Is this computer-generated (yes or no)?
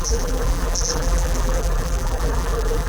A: yes